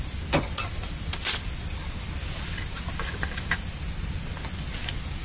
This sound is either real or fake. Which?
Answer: real